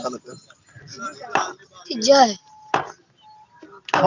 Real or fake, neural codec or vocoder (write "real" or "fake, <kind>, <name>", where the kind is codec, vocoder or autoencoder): real